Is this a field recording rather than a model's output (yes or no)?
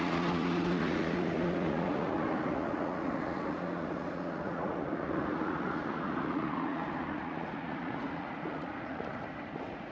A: no